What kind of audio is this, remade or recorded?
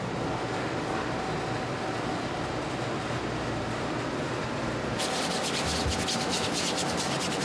recorded